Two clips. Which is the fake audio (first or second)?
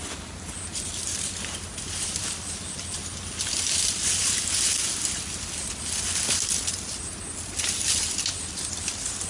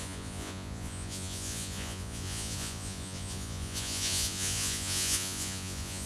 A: second